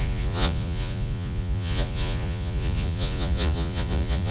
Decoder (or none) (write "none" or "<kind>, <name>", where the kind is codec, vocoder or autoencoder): vocoder, Vocos